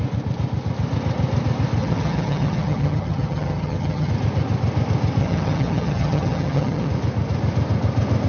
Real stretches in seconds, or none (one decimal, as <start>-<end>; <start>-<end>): 0.0-1.8; 4.1-5.2; 6.9-8.3